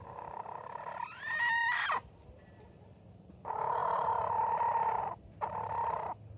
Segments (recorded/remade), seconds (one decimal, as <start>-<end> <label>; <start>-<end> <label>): 0.0-6.4 recorded